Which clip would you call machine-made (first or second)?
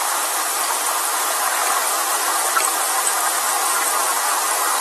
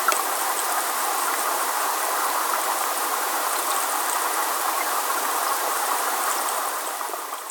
second